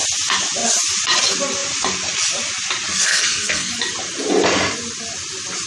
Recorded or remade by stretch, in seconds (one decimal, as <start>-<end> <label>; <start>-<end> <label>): 0.0-2.9 recorded; 2.9-3.7 remade; 3.7-5.7 recorded